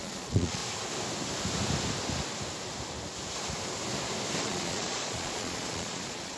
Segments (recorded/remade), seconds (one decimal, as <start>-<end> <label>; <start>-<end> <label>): 0.0-0.6 remade; 0.6-4.4 recorded; 4.4-6.4 remade